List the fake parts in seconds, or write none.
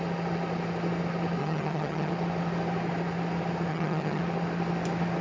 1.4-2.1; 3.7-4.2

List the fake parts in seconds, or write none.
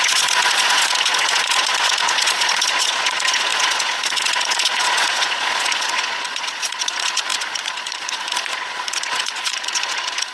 0.0-10.3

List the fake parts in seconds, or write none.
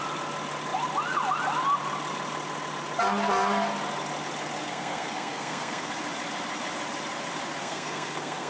4.6-5.9; 7.6-8.5